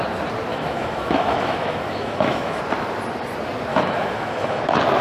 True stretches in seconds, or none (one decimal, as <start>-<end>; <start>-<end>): 0.0-0.5; 2.6-3.7; 4.6-5.0